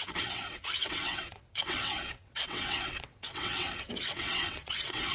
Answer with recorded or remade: remade